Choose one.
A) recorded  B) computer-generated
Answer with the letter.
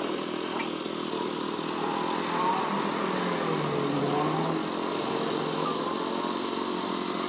A